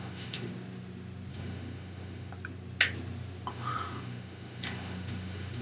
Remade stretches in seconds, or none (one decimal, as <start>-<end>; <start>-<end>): 0.0-0.5; 1.3-2.3; 3.5-5.6